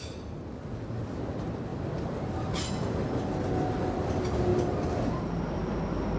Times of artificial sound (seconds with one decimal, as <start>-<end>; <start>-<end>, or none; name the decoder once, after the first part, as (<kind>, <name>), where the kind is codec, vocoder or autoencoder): none